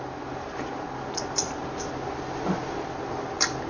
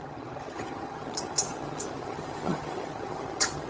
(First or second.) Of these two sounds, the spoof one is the second